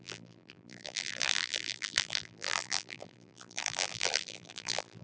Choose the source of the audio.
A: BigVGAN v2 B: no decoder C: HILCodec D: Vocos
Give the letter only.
A